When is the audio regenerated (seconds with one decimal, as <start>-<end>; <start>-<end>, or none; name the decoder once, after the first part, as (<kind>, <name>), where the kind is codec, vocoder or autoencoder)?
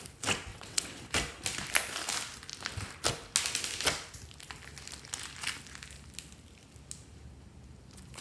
0.5-1.0 (vocoder, WaveNeXt)